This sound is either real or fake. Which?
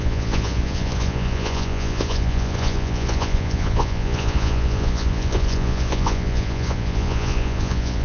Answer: fake